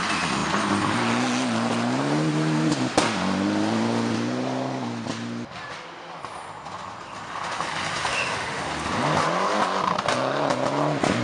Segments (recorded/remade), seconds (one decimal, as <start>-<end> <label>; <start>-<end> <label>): 0.0-8.0 recorded; 8.0-8.6 remade; 8.6-11.2 recorded